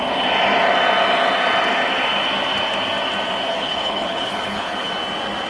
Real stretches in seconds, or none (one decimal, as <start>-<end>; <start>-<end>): 0.0-3.5; 4.9-5.5